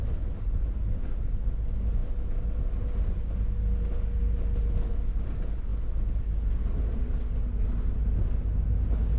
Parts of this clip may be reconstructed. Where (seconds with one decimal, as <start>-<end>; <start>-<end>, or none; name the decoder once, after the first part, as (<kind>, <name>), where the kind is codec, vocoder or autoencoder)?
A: none